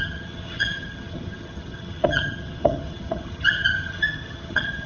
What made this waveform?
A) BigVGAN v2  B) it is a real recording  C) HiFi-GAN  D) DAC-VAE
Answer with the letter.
C